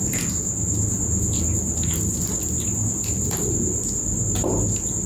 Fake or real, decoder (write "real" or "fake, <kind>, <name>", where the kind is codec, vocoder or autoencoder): real